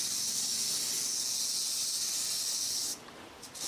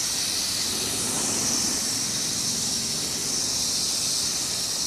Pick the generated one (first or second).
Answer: second